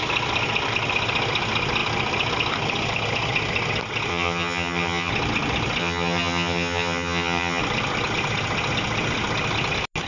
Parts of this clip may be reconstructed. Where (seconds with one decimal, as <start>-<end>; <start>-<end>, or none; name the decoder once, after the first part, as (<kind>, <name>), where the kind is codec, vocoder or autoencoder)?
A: 4.1-5.1 (vocoder, HiFi-GAN); 5.8-7.6